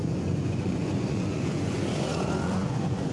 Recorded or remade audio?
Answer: remade